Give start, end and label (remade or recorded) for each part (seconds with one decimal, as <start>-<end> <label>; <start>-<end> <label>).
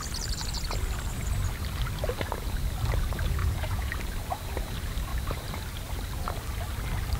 0.0-3.4 recorded; 3.4-3.9 remade; 3.9-7.2 recorded